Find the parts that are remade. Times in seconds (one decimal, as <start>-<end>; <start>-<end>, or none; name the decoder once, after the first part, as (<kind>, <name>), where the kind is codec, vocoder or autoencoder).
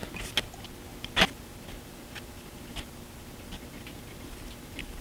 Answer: none